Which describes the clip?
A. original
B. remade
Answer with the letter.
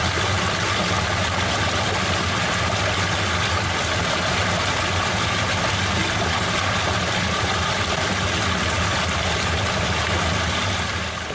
A